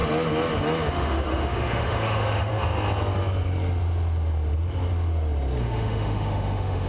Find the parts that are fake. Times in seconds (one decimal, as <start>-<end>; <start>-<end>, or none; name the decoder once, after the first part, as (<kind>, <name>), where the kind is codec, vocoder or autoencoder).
0.9-2.5 (autoencoder, DAC-VAE); 5.6-6.9